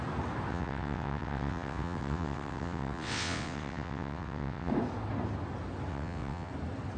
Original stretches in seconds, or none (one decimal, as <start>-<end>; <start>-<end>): 0.0-0.5; 4.7-5.9; 6.5-7.0

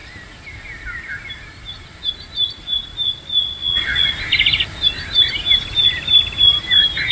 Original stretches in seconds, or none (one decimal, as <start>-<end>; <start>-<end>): 0.0-3.4; 4.1-7.1